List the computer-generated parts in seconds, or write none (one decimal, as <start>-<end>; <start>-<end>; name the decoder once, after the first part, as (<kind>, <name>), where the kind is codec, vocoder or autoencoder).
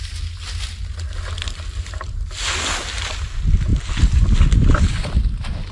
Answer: none